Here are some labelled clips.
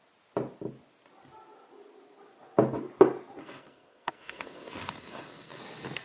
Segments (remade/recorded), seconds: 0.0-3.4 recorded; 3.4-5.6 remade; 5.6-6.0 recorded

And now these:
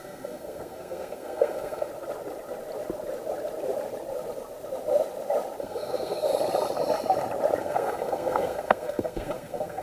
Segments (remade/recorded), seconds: 0.0-1.9 remade; 1.9-5.6 recorded; 5.6-6.3 remade; 6.3-7.6 recorded; 7.6-9.8 remade

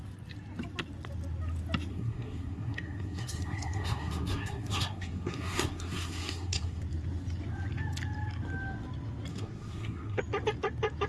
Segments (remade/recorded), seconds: 0.0-1.9 recorded; 1.9-6.8 remade; 6.8-9.3 recorded; 9.3-10.2 remade; 10.2-11.1 recorded

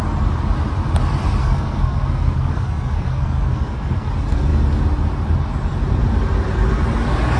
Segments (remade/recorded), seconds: 0.0-1.4 recorded; 1.4-4.1 remade; 4.1-7.4 recorded

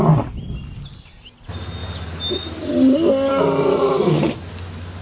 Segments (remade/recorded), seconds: 0.0-5.0 recorded

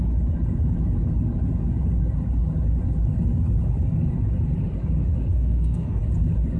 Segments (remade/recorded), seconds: 0.0-5.3 recorded; 5.3-6.0 remade; 6.0-6.6 recorded